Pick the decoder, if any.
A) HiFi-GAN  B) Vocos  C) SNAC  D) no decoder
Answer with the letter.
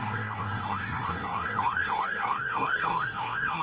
C